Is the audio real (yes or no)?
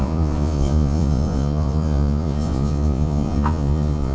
no